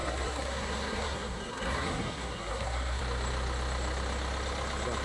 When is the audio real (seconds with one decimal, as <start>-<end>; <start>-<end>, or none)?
3.0-5.0